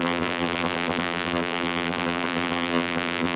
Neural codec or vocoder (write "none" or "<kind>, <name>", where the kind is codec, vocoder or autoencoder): vocoder, BigVGAN v2